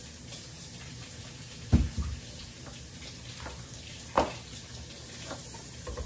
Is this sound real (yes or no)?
no